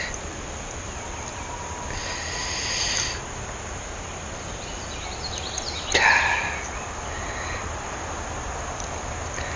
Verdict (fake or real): real